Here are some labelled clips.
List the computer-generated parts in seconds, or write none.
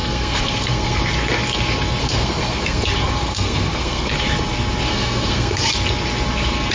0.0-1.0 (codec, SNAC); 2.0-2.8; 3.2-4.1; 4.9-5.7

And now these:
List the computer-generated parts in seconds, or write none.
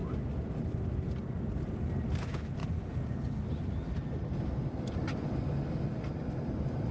none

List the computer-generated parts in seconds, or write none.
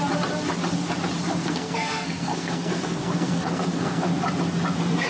1.4-4.1 (codec, SNAC)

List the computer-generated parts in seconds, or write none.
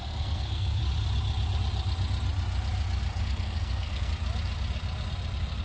0.0-0.8 (codec, SNAC); 3.2-4.1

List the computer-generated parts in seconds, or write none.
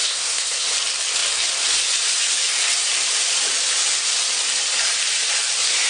0.0-0.7 (codec, SNAC)